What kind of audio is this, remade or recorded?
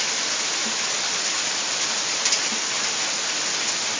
recorded